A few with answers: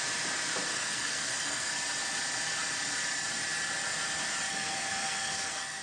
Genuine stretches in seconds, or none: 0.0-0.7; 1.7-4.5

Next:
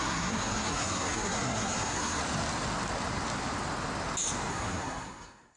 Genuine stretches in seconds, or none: 2.2-4.5

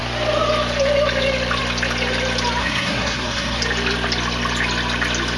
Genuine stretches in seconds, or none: 0.0-2.6; 3.6-5.4

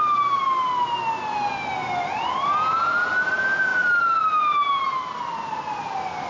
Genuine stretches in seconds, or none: 0.0-6.3

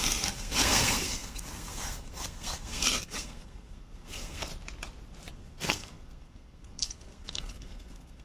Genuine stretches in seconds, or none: 4.5-5.3

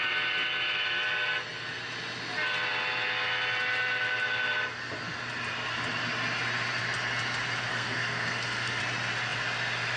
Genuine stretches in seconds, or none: 0.0-7.7; 8.8-10.0